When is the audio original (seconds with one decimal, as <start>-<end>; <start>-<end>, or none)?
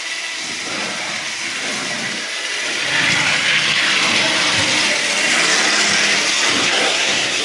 0.0-6.6